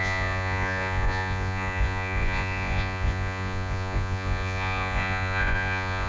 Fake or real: fake